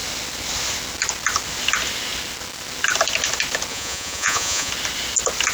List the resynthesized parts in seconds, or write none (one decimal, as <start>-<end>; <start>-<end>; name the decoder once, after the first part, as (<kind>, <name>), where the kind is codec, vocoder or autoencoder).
3.7-4.7 (vocoder, Vocos)